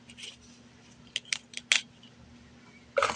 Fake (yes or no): no